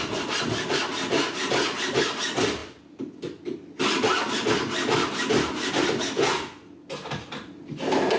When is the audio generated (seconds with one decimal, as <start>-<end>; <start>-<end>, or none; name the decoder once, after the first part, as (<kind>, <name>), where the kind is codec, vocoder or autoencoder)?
none